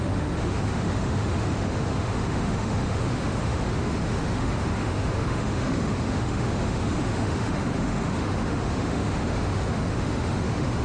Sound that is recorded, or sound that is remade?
remade